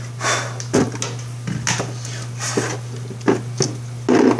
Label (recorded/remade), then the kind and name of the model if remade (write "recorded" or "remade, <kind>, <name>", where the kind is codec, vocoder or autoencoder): recorded